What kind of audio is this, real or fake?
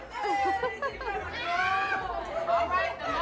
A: real